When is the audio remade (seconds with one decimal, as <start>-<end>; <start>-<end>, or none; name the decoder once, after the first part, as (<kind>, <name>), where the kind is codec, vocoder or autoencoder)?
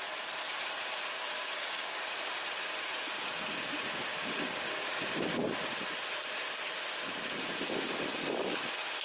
1.0-2.0 (codec, DAC); 4.1-5.0